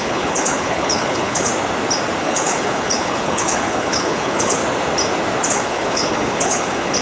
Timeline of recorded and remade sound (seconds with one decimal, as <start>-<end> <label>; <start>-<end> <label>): 0.0-1.5 remade; 1.5-2.2 recorded; 2.2-4.6 remade; 4.6-5.5 recorded; 5.5-7.0 remade